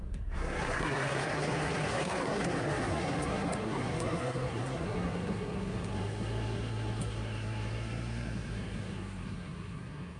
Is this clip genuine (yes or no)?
no